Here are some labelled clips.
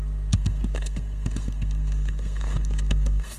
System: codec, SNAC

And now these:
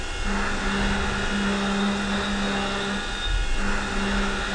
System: none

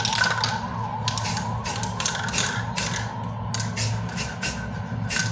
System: none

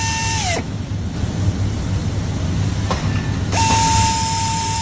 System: none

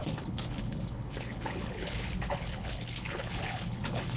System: codec, HILCodec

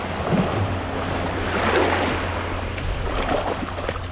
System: none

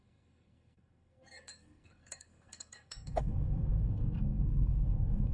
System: codec, SNAC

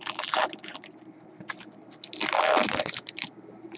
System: none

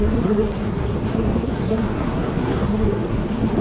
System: codec, SNAC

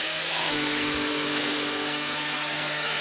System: codec, SNAC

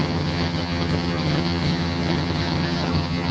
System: vocoder, HiFi-GAN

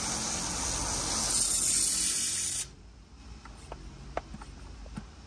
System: none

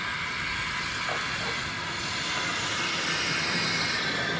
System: none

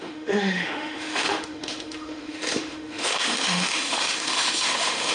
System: autoencoder, DAC-VAE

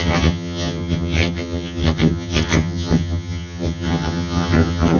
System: vocoder, HiFi-GAN